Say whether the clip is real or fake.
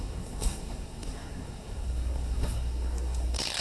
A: fake